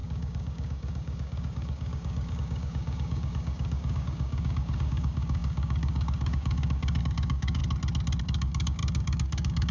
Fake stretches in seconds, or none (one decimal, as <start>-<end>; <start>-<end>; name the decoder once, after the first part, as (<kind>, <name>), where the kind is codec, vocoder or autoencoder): 0.0-7.6 (codec, DAC); 8.2-9.7